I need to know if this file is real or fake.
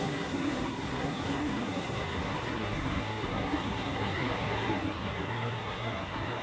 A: fake